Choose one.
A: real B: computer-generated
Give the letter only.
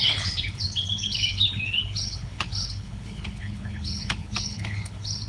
B